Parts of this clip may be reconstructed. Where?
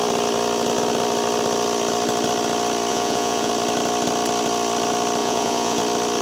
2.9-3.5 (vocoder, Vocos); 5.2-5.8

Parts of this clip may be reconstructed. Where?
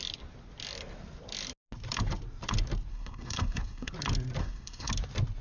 2.9-3.9 (codec, SNAC); 4.4-4.9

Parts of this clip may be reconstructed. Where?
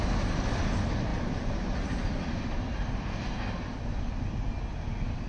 none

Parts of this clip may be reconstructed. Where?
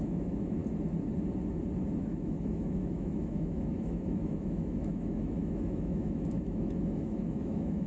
0.0-0.6 (autoencoder, DAC-VAE); 2.0-7.9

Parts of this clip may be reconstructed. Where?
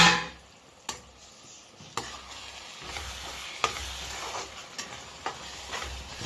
none